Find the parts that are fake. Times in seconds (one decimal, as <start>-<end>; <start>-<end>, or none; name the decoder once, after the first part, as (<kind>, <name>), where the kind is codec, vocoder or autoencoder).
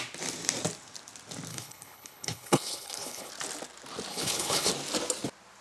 1.5-3.3 (codec, HILCodec); 4.1-4.7